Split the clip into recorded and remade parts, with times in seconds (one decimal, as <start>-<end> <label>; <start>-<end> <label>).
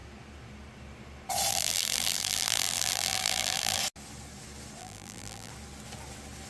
0.0-1.5 recorded; 1.5-3.8 remade; 3.8-4.8 recorded; 4.8-5.5 remade; 5.5-6.5 recorded